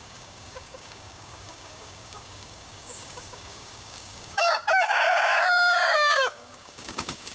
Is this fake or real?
fake